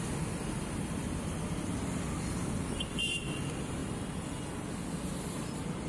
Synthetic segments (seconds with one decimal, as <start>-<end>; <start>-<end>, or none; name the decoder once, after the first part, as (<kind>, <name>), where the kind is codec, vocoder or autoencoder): none